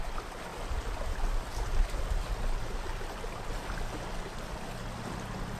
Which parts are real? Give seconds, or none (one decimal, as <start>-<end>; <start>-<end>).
0.0-5.6